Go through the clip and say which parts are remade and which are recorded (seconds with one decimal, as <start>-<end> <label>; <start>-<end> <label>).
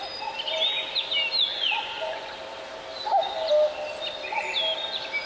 0.0-1.5 recorded; 1.5-2.3 remade; 2.3-5.3 recorded